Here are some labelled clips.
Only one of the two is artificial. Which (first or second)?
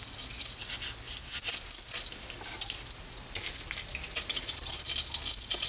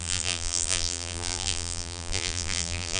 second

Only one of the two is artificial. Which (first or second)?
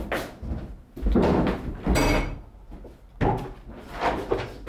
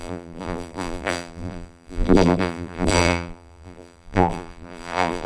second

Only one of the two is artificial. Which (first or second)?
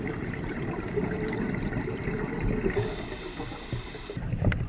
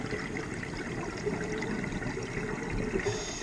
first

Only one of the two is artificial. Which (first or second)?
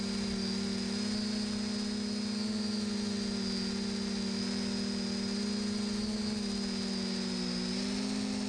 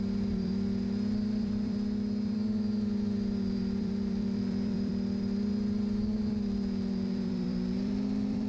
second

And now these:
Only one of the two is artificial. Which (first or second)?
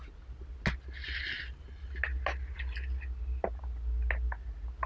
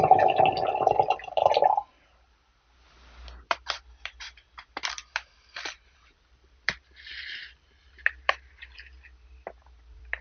second